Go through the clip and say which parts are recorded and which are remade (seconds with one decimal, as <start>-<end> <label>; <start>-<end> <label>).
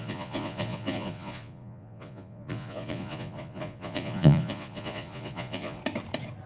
0.0-5.8 remade; 5.8-6.5 recorded